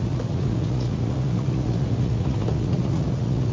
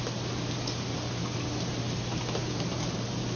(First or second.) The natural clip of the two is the second